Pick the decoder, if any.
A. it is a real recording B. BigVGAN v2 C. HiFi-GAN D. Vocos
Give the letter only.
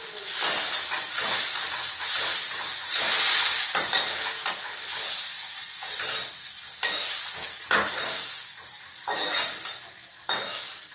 A